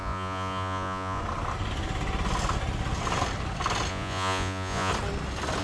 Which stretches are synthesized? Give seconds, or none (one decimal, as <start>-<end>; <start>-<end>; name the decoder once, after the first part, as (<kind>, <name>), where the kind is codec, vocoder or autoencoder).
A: 0.0-1.2 (vocoder, Vocos); 3.9-4.9